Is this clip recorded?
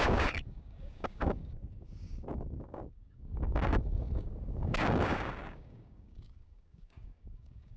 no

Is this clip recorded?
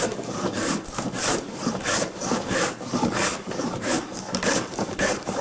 no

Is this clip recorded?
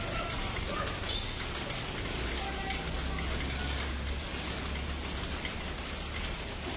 yes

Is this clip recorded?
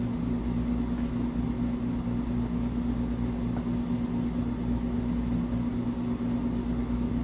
yes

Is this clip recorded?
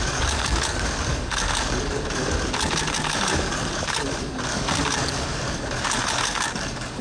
no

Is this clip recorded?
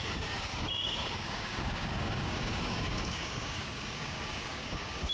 no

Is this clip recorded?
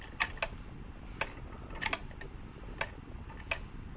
yes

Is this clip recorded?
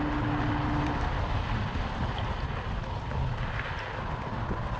yes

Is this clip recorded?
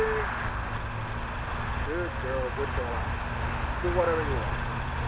yes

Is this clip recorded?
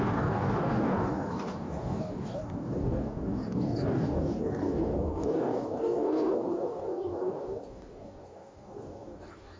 no